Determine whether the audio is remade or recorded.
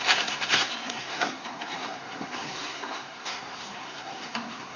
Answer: remade